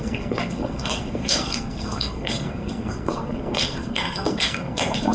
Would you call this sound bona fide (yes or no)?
no